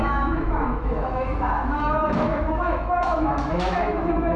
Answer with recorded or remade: remade